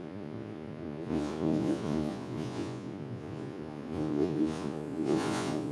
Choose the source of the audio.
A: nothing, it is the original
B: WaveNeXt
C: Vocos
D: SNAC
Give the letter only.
C